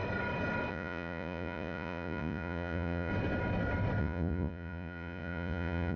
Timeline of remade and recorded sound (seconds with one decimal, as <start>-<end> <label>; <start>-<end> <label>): 0.0-0.7 recorded; 0.7-3.1 remade; 3.1-4.0 recorded; 4.0-6.0 remade